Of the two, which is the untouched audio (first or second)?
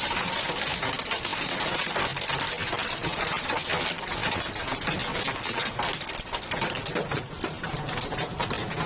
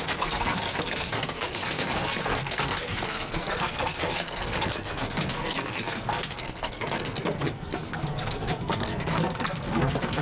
first